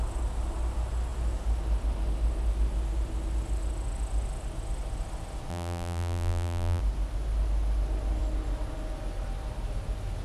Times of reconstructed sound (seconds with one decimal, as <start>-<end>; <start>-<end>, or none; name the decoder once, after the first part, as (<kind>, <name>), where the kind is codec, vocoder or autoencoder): 5.5-6.8 (vocoder, BigVGAN v2)